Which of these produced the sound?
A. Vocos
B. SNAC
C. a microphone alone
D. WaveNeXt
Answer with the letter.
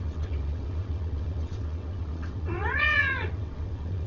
D